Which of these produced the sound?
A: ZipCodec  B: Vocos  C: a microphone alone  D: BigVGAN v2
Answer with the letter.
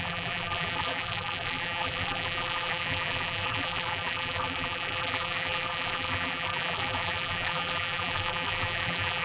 D